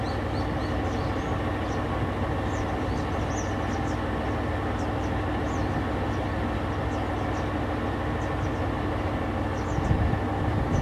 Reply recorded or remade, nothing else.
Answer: recorded